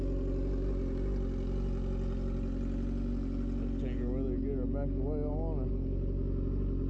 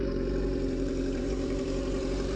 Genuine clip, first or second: first